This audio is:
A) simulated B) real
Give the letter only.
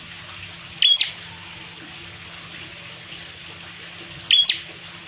B